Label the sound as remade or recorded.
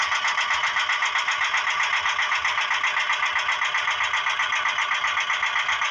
recorded